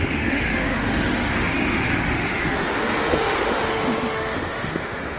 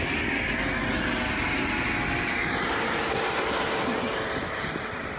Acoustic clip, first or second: second